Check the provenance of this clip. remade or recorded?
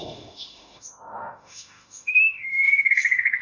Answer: remade